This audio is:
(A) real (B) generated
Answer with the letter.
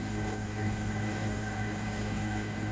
B